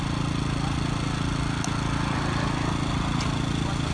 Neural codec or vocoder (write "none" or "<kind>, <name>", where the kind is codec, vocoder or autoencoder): none